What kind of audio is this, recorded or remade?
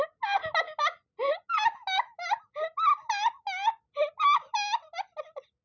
recorded